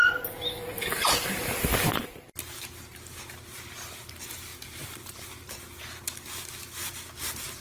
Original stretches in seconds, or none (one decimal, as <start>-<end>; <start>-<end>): 0.0-0.7; 1.5-4.5; 5.5-7.6